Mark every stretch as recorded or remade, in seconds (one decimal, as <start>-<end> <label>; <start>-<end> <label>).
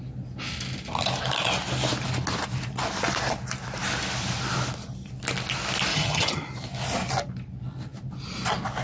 0.0-5.9 recorded; 5.9-6.5 remade; 6.5-8.8 recorded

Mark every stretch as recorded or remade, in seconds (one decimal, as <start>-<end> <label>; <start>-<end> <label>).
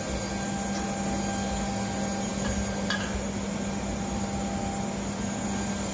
0.0-5.9 recorded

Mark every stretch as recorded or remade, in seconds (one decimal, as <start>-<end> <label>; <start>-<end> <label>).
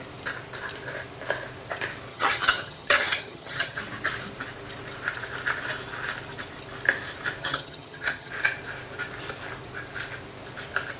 0.0-2.1 recorded; 2.1-3.8 remade; 3.8-7.4 recorded; 7.4-8.3 remade; 8.3-11.0 recorded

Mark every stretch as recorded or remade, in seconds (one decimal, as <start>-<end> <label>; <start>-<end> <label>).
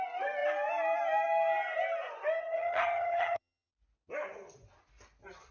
0.0-2.4 recorded; 2.4-3.7 remade; 3.7-5.5 recorded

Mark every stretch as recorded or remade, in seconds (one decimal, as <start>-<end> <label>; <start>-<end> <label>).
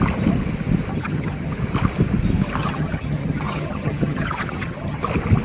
0.0-0.9 recorded; 0.9-1.5 remade; 1.5-2.6 recorded; 2.6-5.0 remade; 5.0-5.4 recorded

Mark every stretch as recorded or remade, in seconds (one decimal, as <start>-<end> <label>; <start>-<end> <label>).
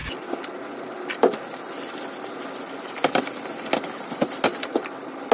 0.0-5.3 recorded